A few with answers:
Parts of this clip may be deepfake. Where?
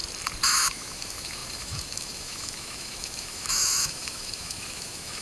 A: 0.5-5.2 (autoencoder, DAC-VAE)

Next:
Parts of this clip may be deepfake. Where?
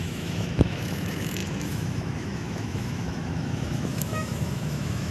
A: 0.0-5.1 (autoencoder, DAC-VAE)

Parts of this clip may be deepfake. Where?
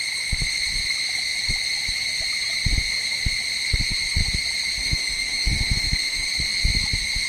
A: 4.8-6.3 (autoencoder, DAC-VAE)